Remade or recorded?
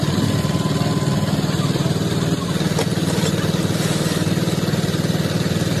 recorded